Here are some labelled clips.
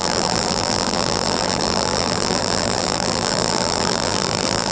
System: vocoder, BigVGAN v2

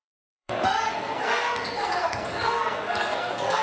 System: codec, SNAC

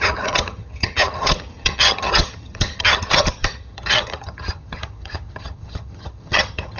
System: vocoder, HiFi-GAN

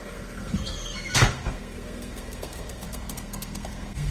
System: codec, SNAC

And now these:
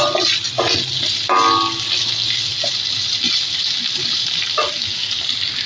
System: none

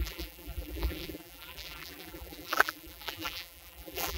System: vocoder, BigVGAN v2